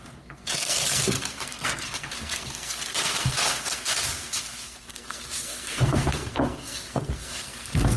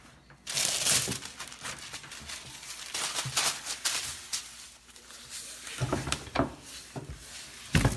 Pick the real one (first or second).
second